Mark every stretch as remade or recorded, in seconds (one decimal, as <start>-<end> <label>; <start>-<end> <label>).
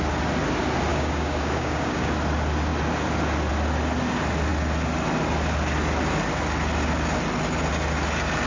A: 0.0-0.9 recorded; 0.9-2.1 remade; 2.1-8.5 recorded